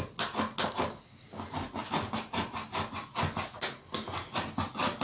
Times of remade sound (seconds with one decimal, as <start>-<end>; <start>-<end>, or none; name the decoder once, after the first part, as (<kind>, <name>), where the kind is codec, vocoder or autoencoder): none